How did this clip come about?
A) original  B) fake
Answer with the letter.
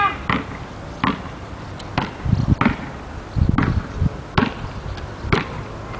A